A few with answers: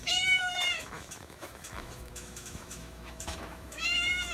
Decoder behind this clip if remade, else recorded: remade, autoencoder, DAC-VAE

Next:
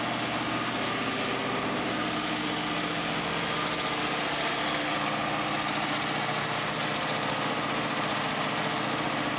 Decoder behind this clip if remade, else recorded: recorded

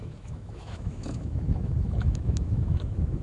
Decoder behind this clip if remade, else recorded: remade, autoencoder, DAC-VAE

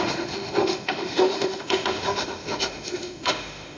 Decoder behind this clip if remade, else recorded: remade, autoencoder, DAC-VAE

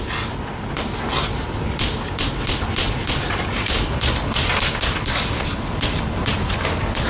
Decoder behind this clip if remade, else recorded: recorded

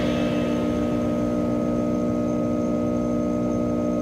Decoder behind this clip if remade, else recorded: recorded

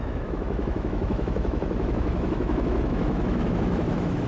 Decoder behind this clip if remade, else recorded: remade, autoencoder, DAC-VAE